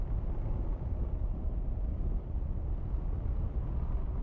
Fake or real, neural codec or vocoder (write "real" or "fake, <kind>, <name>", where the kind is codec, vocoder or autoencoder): real